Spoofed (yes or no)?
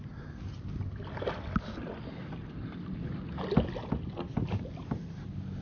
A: no